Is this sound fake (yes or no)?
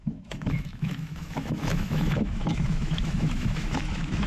yes